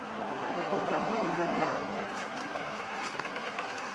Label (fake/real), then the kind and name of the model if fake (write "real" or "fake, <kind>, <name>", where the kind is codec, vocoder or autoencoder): fake, codec, SNAC